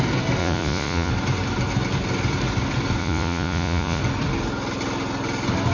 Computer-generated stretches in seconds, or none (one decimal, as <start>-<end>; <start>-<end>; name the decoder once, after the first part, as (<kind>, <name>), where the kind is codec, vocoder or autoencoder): 0.4-1.1 (vocoder, Vocos); 3.0-4.0